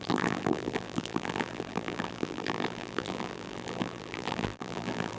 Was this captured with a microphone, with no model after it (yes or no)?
no